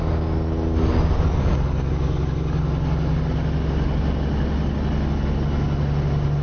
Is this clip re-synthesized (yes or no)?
no